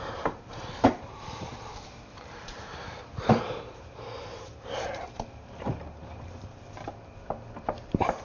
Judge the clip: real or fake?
fake